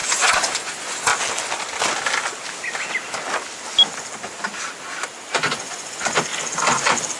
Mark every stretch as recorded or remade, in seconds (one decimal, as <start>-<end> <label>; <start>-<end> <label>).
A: 0.0-1.1 remade; 1.1-5.4 recorded; 5.4-6.3 remade; 6.3-7.2 recorded